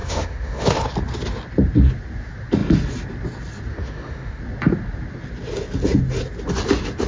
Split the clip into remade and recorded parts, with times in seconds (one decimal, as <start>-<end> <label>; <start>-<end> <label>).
0.0-0.9 remade; 0.9-3.7 recorded; 3.7-4.4 remade; 4.4-7.1 recorded